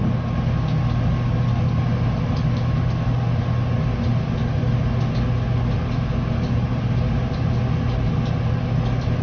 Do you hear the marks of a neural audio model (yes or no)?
no